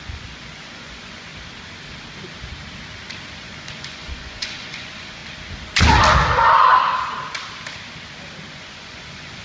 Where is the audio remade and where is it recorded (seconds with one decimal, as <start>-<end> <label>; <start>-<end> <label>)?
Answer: 0.0-1.3 remade; 1.3-3.3 recorded; 3.3-5.2 remade; 5.2-8.5 recorded; 8.5-9.4 remade